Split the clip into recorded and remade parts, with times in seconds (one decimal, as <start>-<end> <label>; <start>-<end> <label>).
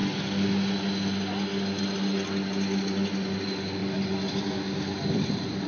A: 0.0-5.7 recorded